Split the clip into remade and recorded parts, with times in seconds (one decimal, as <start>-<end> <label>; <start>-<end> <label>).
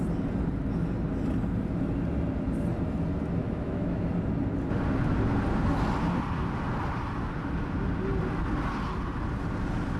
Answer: 0.0-3.4 recorded; 3.4-4.1 remade; 4.1-10.0 recorded